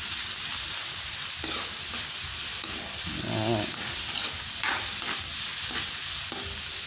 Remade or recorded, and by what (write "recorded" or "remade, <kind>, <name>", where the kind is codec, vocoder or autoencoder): recorded